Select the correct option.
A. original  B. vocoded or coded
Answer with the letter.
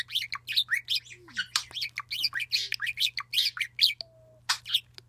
A